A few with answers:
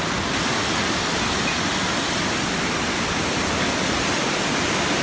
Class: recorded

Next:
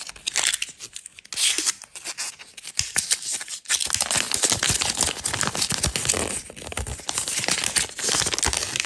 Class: recorded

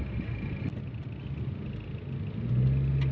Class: recorded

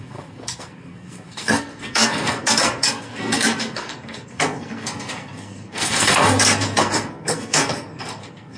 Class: remade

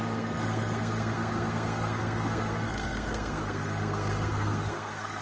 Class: remade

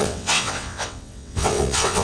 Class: remade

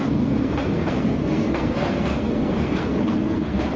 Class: remade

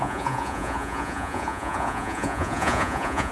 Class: remade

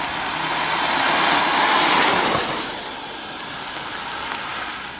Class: recorded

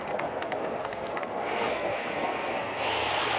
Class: remade